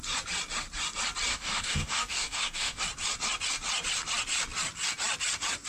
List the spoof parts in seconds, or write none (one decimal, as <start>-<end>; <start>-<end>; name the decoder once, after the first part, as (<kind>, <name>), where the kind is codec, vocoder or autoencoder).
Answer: 1.3-2.8 (codec, DAC)